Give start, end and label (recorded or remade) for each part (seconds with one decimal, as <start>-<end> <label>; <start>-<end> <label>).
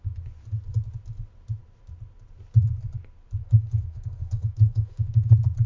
0.0-3.4 recorded; 3.4-5.3 remade; 5.3-5.7 recorded